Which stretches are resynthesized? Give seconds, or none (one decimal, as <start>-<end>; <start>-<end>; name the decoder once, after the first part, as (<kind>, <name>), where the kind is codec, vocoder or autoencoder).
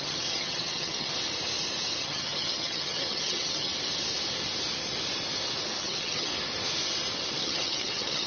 0.0-1.1 (vocoder, HiFi-GAN); 2.0-3.7; 5.8-6.3; 7.3-8.3